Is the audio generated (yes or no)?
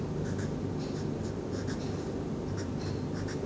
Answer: no